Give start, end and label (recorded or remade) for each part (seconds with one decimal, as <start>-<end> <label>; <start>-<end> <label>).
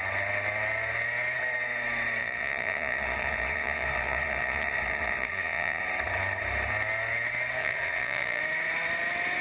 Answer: 0.0-2.2 recorded; 2.2-5.8 remade; 5.8-7.6 recorded; 7.6-8.4 remade; 8.4-9.4 recorded